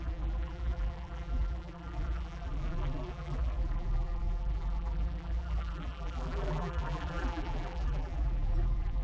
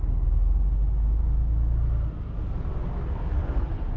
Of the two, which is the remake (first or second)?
first